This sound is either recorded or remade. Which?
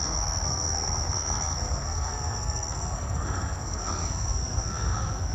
remade